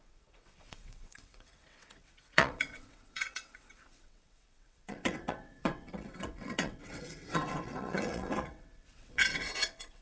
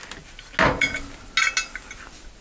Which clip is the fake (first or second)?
first